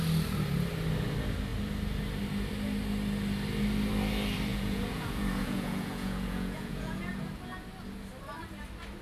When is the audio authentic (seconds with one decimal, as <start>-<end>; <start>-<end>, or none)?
0.0-4.5; 7.1-9.0